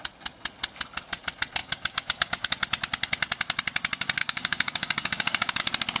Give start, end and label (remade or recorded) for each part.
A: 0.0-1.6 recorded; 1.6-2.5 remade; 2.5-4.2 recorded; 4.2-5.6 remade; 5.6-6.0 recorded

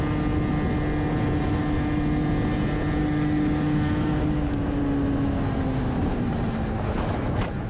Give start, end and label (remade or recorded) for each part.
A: 0.0-3.0 recorded; 3.0-4.8 remade; 4.8-7.7 recorded

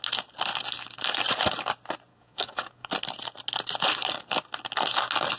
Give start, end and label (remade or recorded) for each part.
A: 0.0-2.1 recorded; 2.1-2.9 remade; 2.9-5.4 recorded